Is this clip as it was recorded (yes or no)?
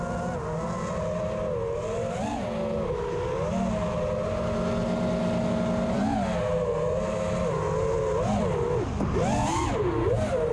yes